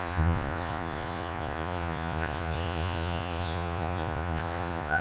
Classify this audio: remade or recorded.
remade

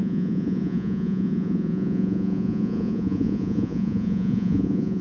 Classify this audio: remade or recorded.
remade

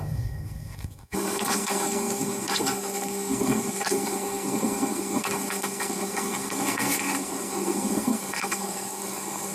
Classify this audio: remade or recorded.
remade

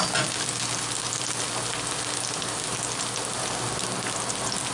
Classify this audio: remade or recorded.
recorded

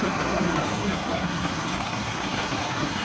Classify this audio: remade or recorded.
remade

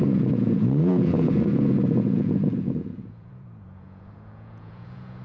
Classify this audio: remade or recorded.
remade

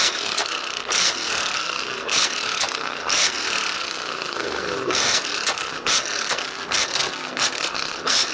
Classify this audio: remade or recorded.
remade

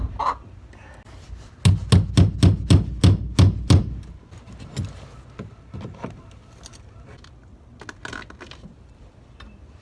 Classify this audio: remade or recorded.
recorded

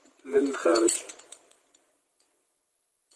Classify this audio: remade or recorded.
remade